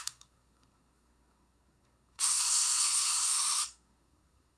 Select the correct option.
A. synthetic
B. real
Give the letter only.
A